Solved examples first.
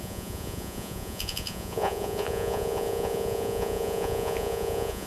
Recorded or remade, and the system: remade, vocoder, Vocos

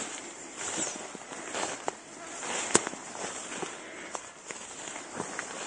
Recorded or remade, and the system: recorded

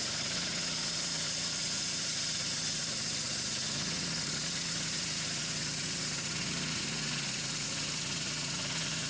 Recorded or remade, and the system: remade, vocoder, Vocos